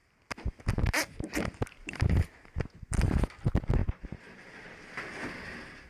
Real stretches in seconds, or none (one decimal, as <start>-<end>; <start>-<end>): 0.0-3.8; 4.8-5.9